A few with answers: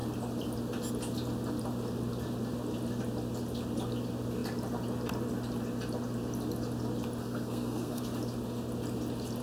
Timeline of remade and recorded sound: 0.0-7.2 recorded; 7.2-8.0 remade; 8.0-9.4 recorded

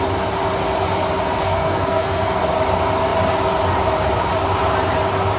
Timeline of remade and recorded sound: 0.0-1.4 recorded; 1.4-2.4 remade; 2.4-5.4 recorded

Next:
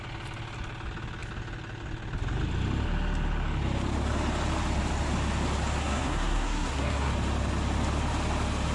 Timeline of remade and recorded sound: 0.0-5.8 recorded; 5.8-7.1 remade; 7.1-8.7 recorded

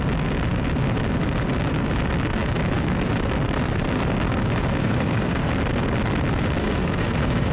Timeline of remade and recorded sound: 0.0-4.8 recorded; 4.8-5.5 remade; 5.5-6.6 recorded; 6.6-7.5 remade

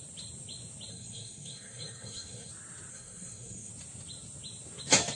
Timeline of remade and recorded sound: 0.0-0.9 recorded; 0.9-2.5 remade; 2.5-2.9 recorded; 2.9-3.7 remade; 3.7-5.2 recorded